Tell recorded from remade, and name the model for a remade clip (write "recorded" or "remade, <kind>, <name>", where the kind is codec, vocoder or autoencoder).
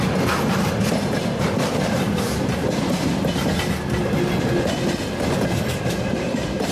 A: recorded